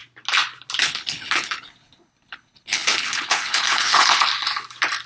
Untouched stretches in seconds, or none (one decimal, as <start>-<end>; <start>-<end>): 0.0-0.8; 4.3-5.1